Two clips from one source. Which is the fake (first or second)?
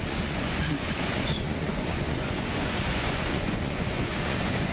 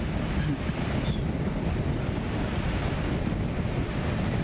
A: first